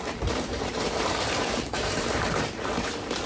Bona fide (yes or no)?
no